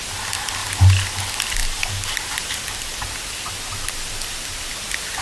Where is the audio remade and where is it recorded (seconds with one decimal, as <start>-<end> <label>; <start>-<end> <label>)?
0.0-5.2 recorded